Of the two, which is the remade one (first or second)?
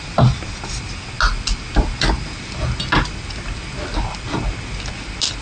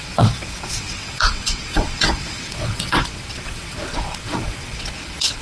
second